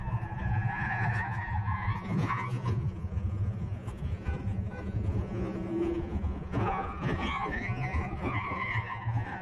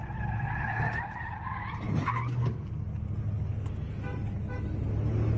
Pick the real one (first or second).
second